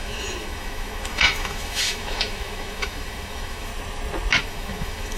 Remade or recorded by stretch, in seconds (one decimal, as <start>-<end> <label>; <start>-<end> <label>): 0.0-3.7 remade; 3.7-4.4 recorded; 4.4-5.2 remade